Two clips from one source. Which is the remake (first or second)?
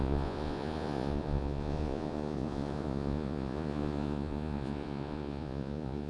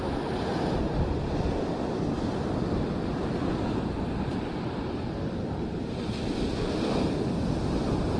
first